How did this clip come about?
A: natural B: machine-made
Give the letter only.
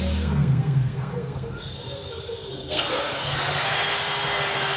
B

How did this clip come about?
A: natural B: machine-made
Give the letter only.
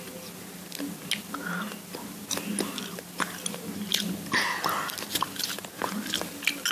A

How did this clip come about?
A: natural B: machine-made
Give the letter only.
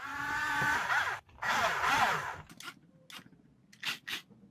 A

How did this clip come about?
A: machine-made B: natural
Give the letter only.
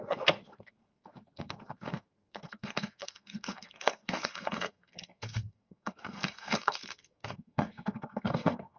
A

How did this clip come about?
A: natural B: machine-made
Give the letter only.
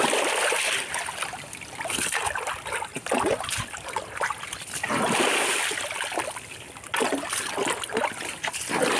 A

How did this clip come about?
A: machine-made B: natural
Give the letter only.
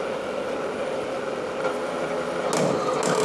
B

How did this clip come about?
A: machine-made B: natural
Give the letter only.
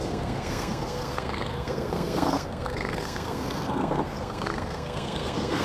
A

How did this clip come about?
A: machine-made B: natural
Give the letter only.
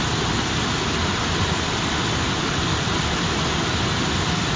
B